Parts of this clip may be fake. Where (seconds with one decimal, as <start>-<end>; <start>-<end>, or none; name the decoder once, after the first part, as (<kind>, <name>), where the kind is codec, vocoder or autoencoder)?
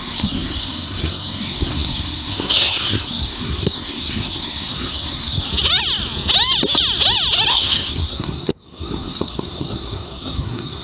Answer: 0.0-5.5 (codec, SNAC); 7.5-10.8